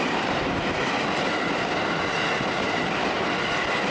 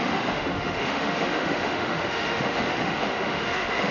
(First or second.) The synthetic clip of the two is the second